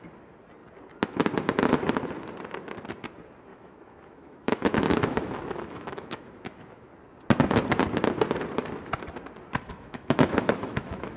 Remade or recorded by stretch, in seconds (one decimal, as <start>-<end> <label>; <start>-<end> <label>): 0.0-3.5 recorded; 3.5-6.9 remade; 6.9-9.7 recorded; 9.7-11.2 remade